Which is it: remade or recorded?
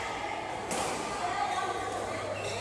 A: recorded